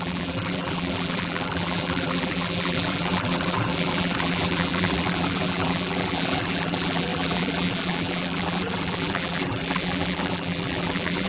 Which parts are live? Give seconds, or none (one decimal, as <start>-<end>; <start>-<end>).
none